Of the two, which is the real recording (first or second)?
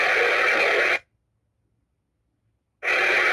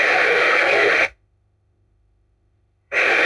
first